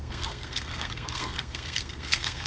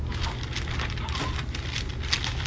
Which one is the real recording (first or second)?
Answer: second